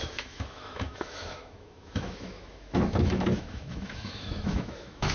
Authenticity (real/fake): fake